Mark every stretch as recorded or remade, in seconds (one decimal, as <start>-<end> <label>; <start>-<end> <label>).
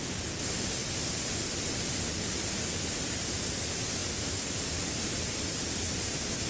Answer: 0.0-6.5 recorded